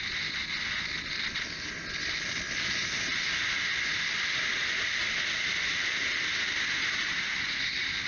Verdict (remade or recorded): recorded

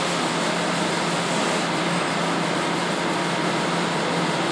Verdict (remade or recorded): recorded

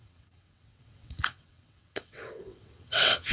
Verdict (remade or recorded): remade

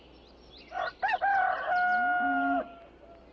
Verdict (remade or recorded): recorded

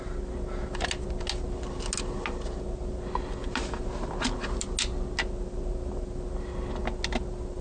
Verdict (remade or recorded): recorded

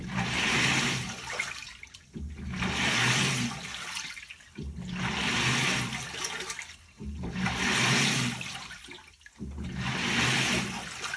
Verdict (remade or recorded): recorded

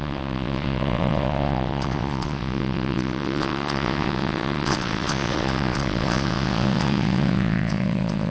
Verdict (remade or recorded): remade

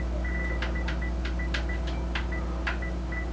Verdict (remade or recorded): recorded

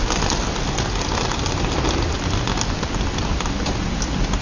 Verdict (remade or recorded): recorded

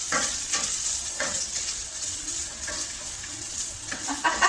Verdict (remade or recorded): remade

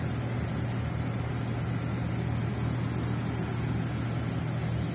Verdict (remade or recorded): recorded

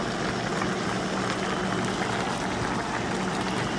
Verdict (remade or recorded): recorded